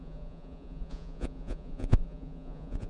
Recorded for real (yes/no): no